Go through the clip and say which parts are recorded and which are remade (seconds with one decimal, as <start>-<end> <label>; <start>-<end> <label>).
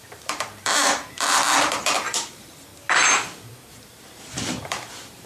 0.0-2.7 remade; 2.7-3.8 recorded; 3.8-5.3 remade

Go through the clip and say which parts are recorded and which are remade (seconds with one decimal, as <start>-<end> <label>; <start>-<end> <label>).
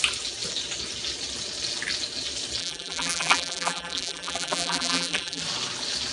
0.0-2.6 recorded; 2.6-5.4 remade; 5.4-6.1 recorded